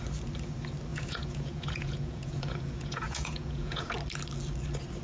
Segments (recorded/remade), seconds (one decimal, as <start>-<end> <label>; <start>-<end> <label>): 0.0-0.9 recorded; 0.9-3.9 remade; 3.9-5.0 recorded